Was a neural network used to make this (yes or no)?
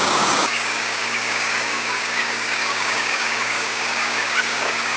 yes